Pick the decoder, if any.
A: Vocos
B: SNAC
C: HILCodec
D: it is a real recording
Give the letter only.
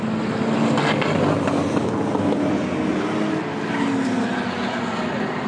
D